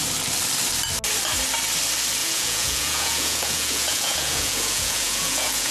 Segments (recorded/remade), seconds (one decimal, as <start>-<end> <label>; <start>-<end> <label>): 0.0-2.2 recorded; 2.2-5.7 remade